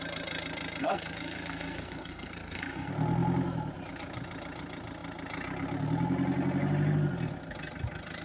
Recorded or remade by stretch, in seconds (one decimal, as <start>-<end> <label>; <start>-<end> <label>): 0.0-0.8 recorded; 0.8-2.9 remade; 2.9-8.2 recorded